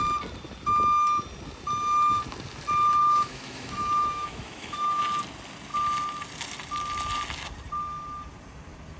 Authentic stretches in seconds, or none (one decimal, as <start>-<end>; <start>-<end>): 0.0-3.0; 5.0-9.0